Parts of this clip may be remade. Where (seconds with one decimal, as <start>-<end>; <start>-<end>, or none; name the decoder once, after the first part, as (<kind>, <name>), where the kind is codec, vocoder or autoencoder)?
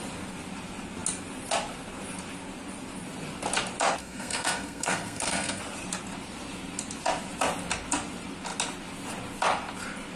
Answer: 4.0-5.6 (codec, SNAC)